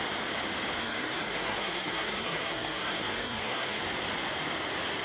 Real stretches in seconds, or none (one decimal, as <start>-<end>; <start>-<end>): 0.0-0.8; 3.8-5.0